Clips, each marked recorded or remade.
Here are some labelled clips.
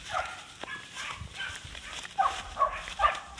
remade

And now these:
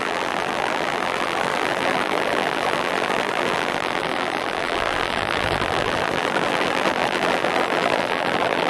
remade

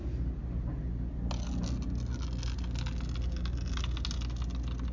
recorded